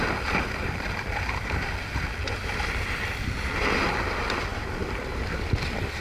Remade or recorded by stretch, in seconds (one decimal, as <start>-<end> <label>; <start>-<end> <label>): 0.0-4.5 recorded; 4.5-5.4 remade; 5.4-6.0 recorded